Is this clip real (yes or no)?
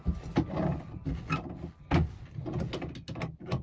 yes